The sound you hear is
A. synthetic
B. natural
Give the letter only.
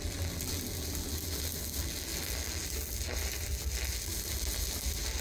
B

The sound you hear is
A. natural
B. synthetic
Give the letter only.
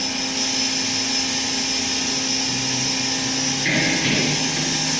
A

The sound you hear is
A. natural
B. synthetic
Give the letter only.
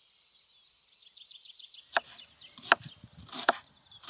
A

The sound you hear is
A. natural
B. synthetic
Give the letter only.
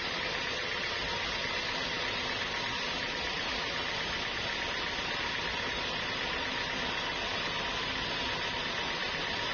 A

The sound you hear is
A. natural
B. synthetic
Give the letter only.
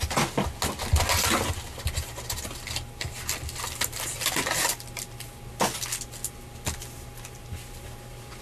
A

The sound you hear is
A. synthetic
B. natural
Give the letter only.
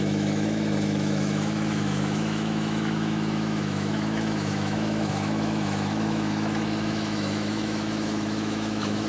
A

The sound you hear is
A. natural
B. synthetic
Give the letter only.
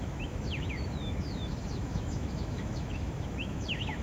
B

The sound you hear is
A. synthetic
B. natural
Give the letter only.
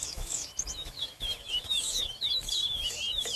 A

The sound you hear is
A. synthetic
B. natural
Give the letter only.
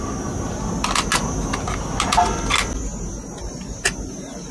B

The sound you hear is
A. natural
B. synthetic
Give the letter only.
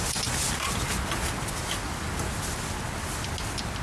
A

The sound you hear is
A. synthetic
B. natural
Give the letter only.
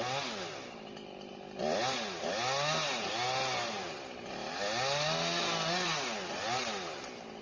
B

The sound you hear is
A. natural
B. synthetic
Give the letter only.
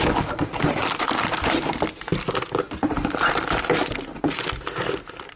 A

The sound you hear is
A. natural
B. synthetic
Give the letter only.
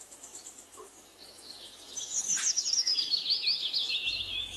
B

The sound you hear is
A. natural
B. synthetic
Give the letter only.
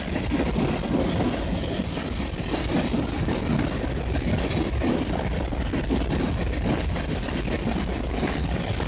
A